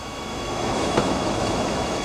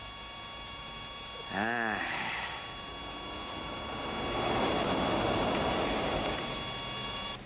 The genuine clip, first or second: second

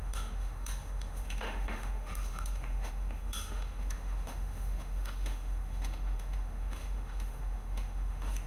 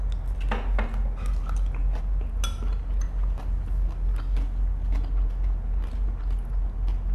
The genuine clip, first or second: second